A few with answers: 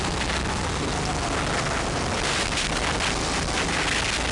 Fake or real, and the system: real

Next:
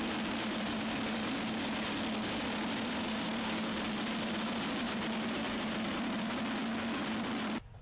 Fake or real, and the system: fake, vocoder, BigVGAN v2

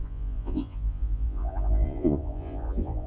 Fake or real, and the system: fake, vocoder, Vocos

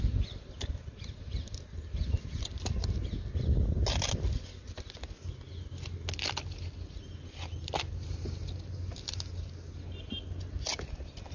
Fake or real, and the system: real